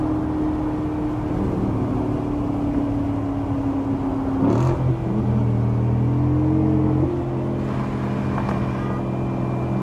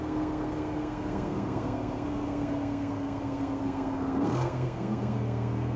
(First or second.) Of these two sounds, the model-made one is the second